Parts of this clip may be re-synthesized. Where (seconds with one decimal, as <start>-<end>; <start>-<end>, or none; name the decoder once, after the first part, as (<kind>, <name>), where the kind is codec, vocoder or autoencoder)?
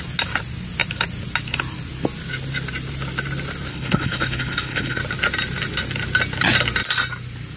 3.7-5.0 (codec, HILCodec)